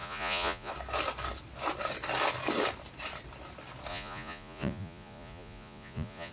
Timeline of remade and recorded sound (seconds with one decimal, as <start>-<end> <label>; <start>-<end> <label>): 0.0-0.7 remade; 0.7-3.9 recorded; 3.9-6.3 remade